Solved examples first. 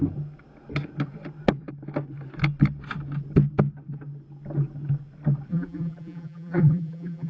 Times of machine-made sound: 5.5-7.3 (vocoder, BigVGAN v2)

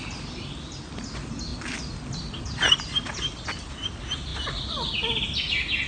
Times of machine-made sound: none

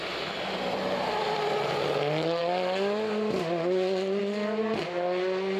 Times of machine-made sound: none

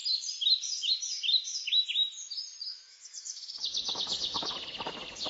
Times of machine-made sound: 2.7-4.5 (autoencoder, DAC-VAE)

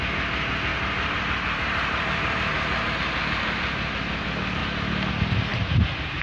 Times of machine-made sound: 0.7-3.0 (vocoder, BigVGAN v2); 5.5-6.2

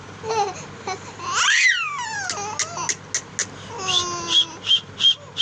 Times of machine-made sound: none